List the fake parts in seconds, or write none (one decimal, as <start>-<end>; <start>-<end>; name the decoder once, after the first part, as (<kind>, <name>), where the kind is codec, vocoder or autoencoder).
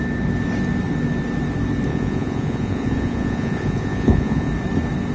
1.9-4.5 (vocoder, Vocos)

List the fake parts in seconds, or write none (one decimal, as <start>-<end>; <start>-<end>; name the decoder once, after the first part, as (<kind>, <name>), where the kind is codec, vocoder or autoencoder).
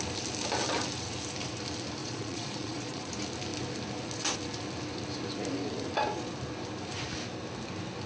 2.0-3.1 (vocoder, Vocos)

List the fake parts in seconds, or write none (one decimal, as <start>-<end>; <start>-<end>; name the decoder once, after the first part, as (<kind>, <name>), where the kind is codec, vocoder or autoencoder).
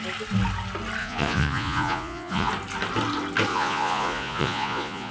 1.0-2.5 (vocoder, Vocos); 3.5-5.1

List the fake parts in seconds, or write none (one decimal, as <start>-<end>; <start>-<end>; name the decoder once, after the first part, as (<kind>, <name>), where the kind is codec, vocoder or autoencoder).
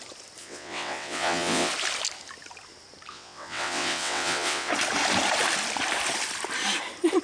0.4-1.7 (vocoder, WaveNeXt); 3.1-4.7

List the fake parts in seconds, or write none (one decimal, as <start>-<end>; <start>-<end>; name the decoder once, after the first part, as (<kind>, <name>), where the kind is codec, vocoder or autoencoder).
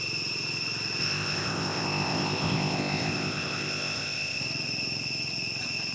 1.0-4.4 (codec, ZipCodec)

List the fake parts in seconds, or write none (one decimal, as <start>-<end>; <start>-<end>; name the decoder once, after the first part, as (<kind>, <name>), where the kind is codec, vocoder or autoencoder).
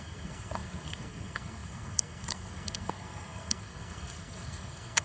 0.0-5.0 (codec, SNAC)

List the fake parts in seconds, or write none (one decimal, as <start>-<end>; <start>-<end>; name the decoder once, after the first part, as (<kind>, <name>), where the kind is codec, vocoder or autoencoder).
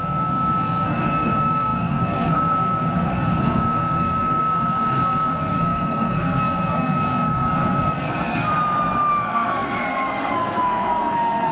0.0-8.5 (codec, SNAC); 9.1-11.5